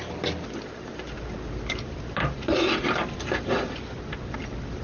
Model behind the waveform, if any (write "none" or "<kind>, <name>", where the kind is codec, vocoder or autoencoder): none